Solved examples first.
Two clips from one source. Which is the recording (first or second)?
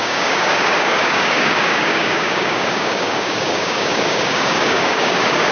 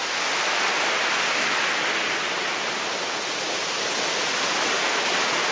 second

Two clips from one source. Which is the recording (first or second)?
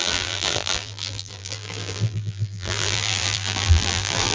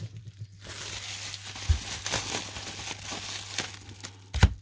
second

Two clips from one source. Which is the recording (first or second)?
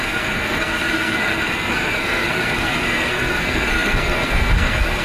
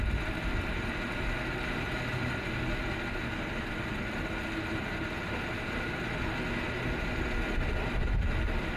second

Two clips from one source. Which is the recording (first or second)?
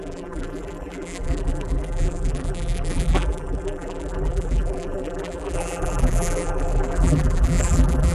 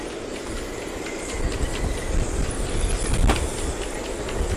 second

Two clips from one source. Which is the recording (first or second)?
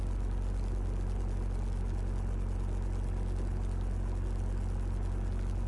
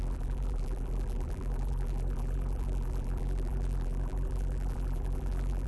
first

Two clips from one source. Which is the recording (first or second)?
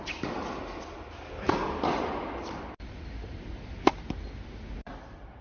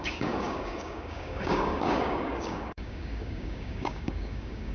first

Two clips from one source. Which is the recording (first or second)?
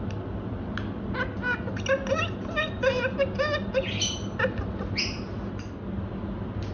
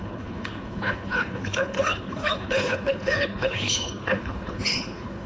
first